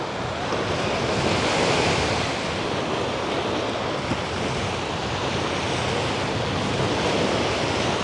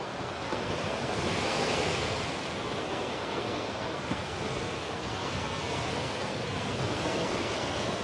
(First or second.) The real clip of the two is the first